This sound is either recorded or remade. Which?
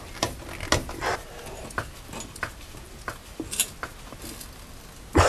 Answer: recorded